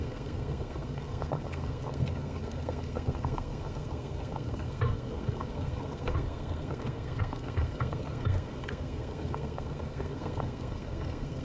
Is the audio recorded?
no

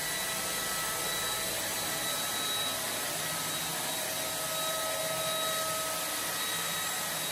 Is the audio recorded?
yes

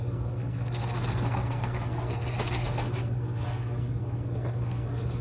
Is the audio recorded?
no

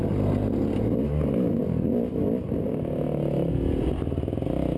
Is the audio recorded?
yes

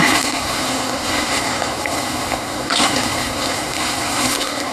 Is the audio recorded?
no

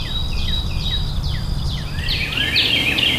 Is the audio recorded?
yes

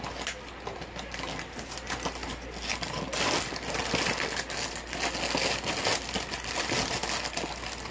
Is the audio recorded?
yes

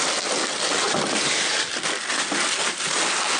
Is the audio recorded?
yes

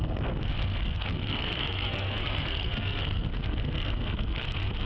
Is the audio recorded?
no